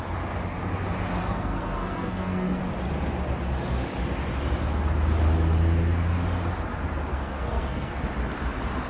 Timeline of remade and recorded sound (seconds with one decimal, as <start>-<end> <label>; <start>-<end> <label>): 0.0-1.2 recorded; 1.2-2.6 remade; 2.6-7.1 recorded; 7.1-8.0 remade; 8.0-8.9 recorded